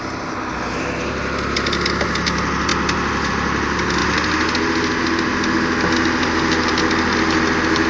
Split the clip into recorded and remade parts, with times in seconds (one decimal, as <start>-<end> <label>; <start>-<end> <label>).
0.0-7.9 recorded